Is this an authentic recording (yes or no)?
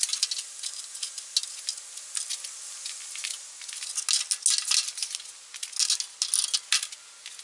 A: yes